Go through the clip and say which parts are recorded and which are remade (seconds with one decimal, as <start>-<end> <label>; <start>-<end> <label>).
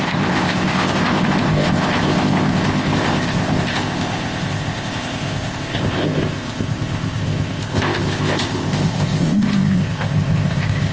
0.0-10.9 remade